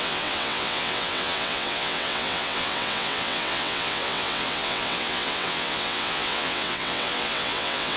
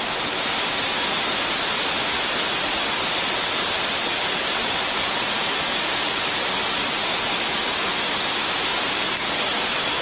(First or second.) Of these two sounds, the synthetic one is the first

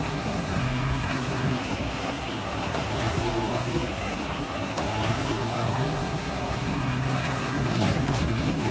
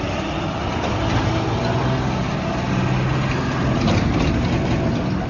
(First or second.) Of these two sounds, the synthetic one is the first